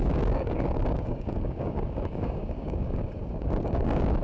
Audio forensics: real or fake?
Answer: fake